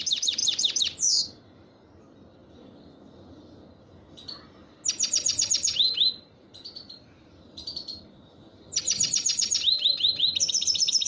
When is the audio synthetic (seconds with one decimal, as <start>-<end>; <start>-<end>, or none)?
0.0-2.4; 7.2-11.1